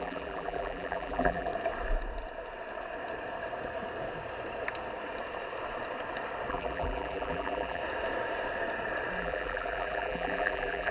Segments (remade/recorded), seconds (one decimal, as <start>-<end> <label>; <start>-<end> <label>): 0.0-1.5 remade; 1.5-6.5 recorded; 6.5-7.8 remade; 7.8-9.2 recorded; 9.2-10.9 remade